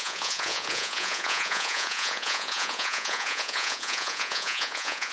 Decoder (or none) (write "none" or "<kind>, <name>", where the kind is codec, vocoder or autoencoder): vocoder, Vocos